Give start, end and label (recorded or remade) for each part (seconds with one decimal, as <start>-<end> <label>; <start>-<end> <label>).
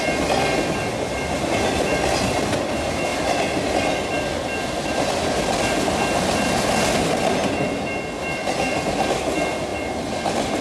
0.0-10.6 recorded